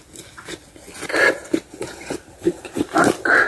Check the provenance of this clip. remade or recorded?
recorded